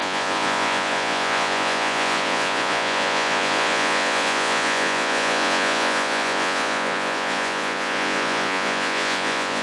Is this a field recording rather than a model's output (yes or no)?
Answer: no